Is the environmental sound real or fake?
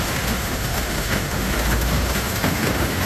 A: fake